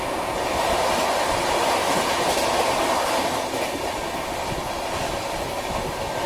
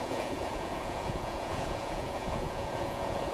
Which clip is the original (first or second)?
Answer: first